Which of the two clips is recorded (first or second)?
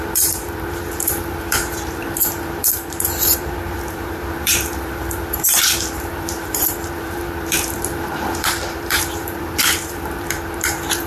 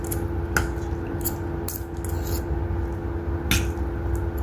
second